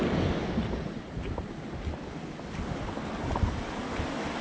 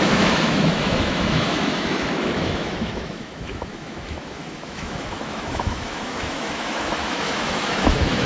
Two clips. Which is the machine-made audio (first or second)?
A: second